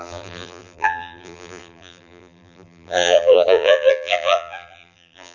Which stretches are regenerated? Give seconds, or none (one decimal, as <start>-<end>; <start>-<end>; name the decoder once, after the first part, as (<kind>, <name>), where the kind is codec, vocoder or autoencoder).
0.0-5.3 (vocoder, BigVGAN v2)